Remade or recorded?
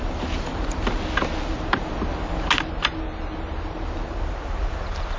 recorded